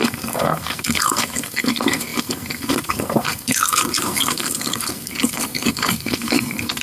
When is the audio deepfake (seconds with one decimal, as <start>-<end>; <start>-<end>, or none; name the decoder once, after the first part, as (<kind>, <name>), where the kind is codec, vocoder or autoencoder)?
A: 0.0-6.8 (codec, SNAC)

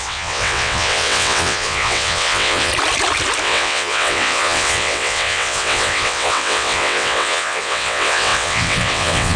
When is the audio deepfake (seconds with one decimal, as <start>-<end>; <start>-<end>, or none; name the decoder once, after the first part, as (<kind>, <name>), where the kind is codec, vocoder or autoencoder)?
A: 0.0-2.7 (vocoder, WaveNeXt); 3.4-9.4